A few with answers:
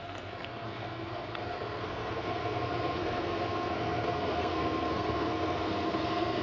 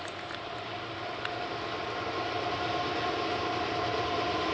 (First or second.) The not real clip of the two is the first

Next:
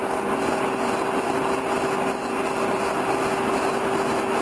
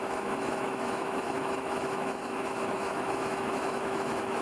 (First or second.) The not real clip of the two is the second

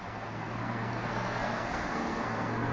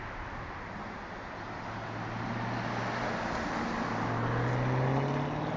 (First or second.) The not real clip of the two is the first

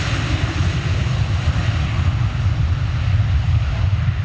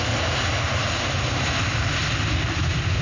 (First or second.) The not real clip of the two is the first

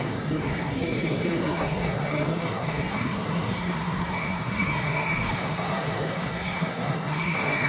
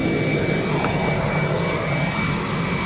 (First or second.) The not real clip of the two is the first